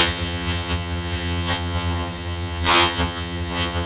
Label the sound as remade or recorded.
remade